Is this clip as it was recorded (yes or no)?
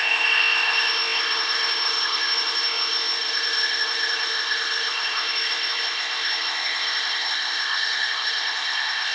no